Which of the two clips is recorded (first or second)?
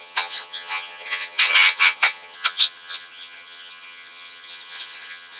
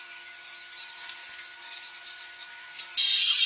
second